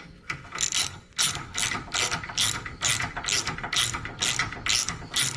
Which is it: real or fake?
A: real